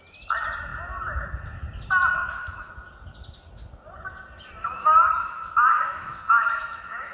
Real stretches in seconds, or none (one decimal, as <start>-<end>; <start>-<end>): 0.0-2.2; 2.7-4.6